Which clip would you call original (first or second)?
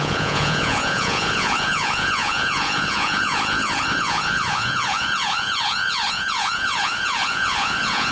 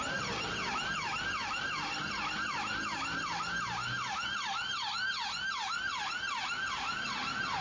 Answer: second